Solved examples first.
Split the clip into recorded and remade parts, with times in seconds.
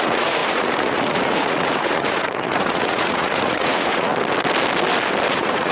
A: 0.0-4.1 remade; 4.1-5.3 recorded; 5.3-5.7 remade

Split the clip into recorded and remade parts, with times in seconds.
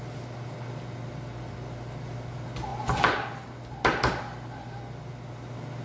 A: 0.0-5.8 recorded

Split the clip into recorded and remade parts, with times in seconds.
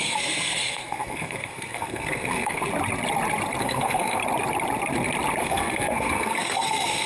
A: 0.0-2.6 remade; 2.6-3.6 recorded; 3.6-4.2 remade; 4.2-5.4 recorded; 5.4-7.1 remade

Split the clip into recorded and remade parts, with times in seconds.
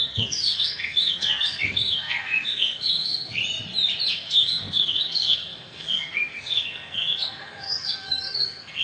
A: 0.0-3.4 remade; 3.4-4.1 recorded; 4.1-8.8 remade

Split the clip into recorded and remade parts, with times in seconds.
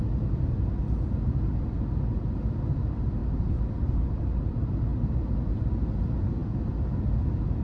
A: 0.0-7.6 recorded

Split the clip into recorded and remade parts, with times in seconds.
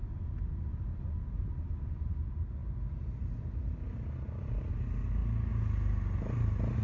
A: 0.0-6.8 recorded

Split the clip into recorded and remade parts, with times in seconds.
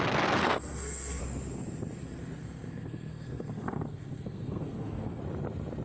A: 0.0-0.4 recorded; 0.4-1.2 remade; 1.2-2.4 recorded; 2.4-5.2 remade; 5.2-5.8 recorded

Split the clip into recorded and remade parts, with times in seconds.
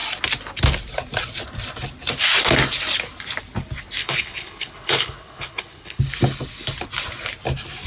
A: 0.0-4.0 recorded; 4.0-6.0 remade; 6.0-7.9 recorded